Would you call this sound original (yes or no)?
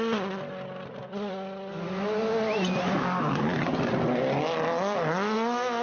yes